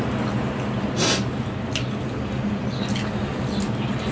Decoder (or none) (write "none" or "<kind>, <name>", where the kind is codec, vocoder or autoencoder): none